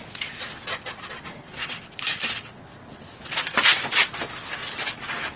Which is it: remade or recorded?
recorded